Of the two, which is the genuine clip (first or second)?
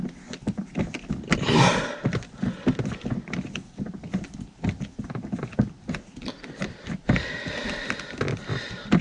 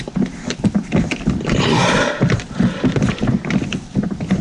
first